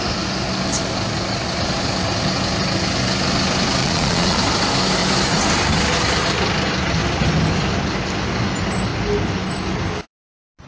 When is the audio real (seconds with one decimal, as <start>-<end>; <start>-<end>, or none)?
0.0-3.8; 4.4-10.7